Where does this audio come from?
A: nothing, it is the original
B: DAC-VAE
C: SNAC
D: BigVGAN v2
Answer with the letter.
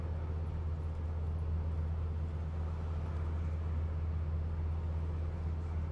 A